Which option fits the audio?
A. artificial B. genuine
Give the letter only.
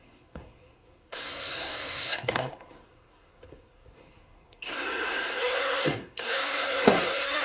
A